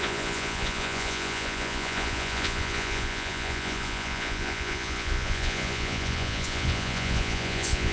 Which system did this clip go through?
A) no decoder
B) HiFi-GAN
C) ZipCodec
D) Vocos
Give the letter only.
D